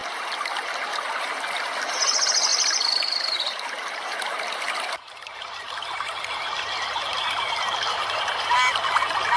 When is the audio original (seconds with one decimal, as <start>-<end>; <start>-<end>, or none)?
0.0-2.5; 5.6-9.4